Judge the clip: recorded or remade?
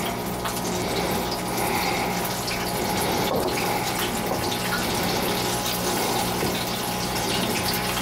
recorded